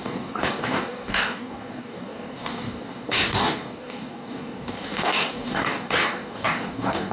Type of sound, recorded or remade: remade